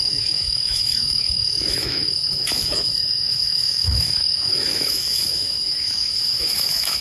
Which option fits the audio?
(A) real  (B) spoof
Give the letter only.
B